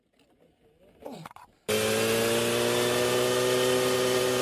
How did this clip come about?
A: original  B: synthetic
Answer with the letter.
A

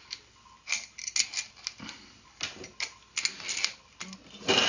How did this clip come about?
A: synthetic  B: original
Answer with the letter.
B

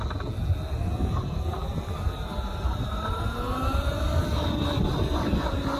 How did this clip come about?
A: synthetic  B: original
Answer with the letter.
B